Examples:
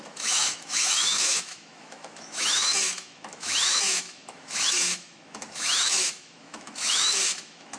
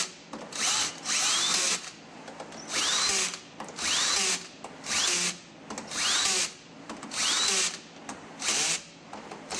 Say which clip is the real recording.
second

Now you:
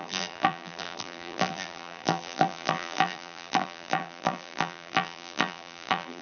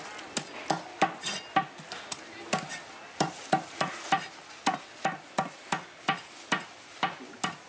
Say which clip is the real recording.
second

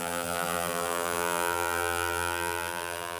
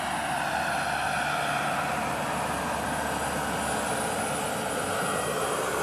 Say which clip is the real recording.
second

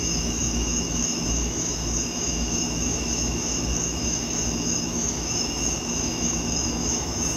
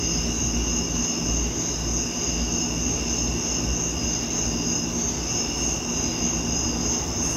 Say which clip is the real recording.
second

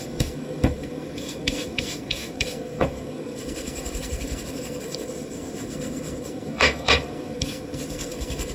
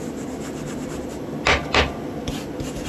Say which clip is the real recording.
second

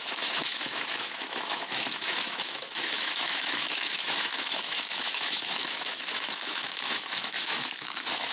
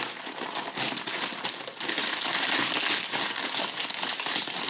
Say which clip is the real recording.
second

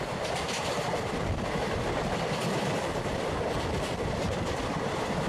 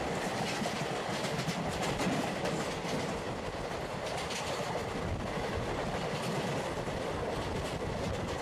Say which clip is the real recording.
second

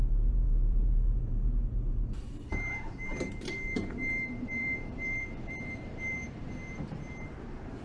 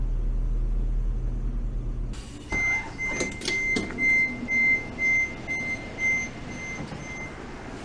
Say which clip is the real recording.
second